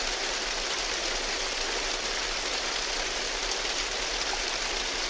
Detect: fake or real real